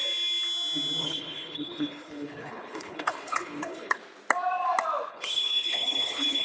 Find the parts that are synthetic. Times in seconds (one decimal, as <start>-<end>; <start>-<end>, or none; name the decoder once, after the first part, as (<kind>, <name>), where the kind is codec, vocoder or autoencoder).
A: 1.0-4.0 (codec, HILCodec); 5.1-6.4